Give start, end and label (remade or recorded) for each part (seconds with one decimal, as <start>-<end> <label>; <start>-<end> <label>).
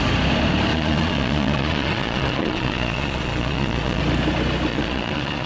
0.0-0.7 recorded; 0.7-4.0 remade; 4.0-4.7 recorded; 4.7-5.5 remade